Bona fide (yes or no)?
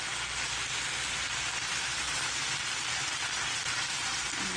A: yes